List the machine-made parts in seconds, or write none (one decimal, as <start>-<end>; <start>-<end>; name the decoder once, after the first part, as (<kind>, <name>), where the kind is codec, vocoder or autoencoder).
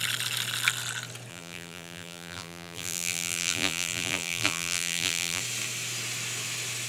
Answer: 1.3-5.4 (vocoder, BigVGAN v2)